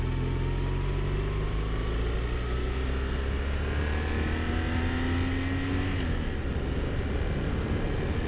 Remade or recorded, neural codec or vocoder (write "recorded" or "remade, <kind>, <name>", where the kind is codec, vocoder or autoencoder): recorded